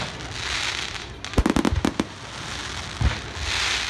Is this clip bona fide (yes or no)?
yes